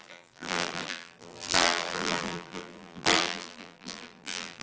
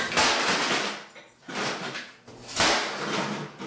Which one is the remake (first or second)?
first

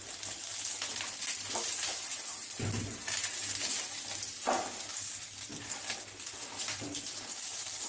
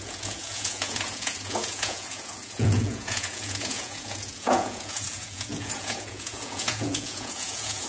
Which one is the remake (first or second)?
second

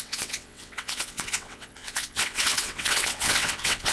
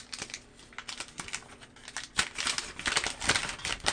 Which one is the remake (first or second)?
first